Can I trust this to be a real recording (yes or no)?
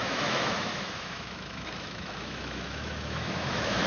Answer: no